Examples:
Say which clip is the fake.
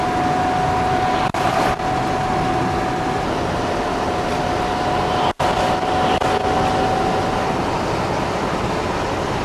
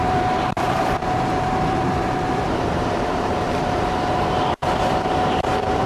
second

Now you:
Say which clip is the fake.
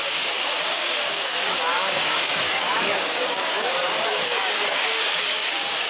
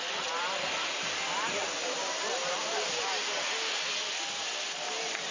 first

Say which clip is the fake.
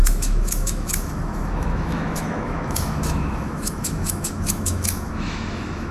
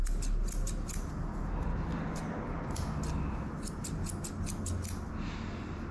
first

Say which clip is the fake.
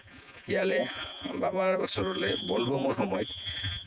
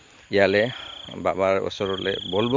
first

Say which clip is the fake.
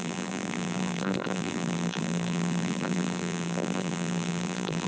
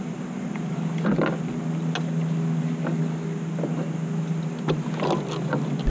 first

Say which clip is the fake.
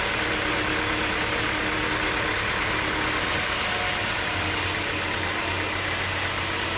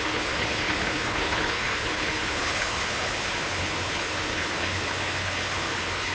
second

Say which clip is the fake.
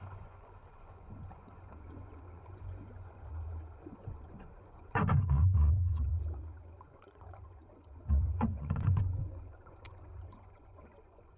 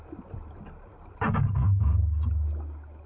first